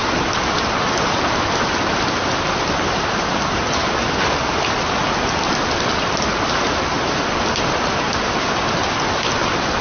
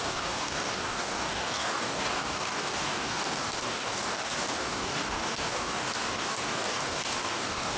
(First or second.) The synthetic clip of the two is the second